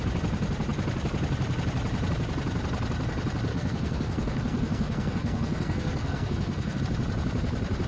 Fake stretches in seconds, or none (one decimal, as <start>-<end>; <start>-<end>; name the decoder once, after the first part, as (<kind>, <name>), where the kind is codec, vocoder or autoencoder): 3.5-6.8 (codec, SNAC)